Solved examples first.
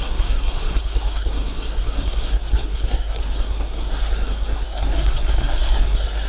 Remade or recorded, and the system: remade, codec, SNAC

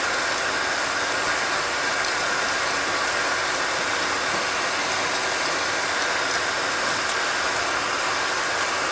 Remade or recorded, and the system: recorded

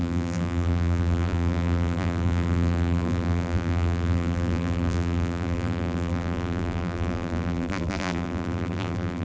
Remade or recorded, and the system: remade, vocoder, BigVGAN v2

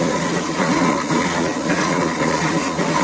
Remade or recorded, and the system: remade, vocoder, Vocos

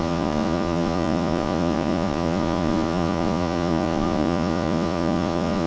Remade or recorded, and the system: remade, vocoder, Vocos